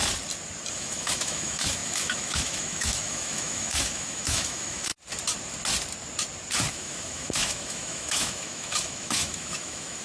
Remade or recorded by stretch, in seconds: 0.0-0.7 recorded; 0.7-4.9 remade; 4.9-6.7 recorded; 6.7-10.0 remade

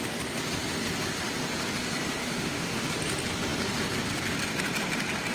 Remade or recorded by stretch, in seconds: 0.0-2.2 recorded; 2.2-2.8 remade; 2.8-5.3 recorded

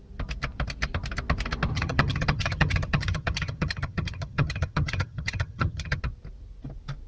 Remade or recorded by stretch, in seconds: 0.0-1.7 recorded; 1.7-6.0 remade; 6.0-7.1 recorded

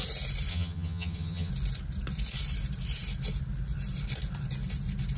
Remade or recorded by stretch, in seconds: 0.0-0.5 recorded; 0.5-1.5 remade; 1.5-5.2 recorded

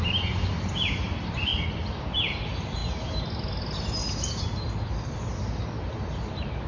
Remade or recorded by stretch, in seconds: 0.0-1.5 remade; 1.5-2.1 recorded; 2.1-2.8 remade; 2.8-6.3 recorded; 6.3-6.7 remade

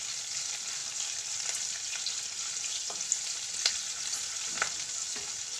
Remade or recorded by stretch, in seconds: 0.0-5.6 recorded

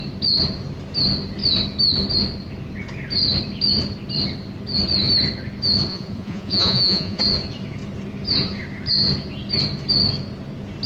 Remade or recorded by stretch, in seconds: 0.0-5.9 recorded; 5.9-7.2 remade; 7.2-10.9 recorded

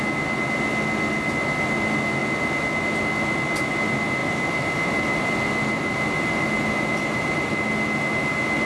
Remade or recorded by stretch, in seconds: 0.0-4.2 recorded; 4.2-7.5 remade; 7.5-8.7 recorded